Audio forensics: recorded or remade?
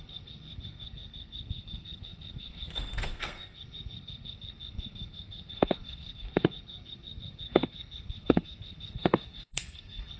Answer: remade